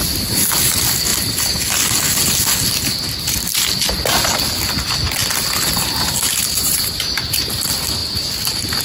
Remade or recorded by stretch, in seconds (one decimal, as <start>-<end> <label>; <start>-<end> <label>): 0.0-6.4 recorded; 6.4-7.5 remade; 7.5-8.8 recorded